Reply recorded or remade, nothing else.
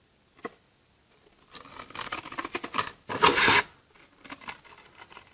recorded